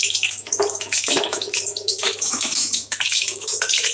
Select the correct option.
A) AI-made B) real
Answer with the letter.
A